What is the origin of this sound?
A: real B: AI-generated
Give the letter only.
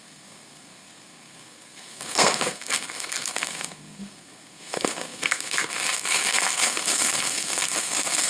B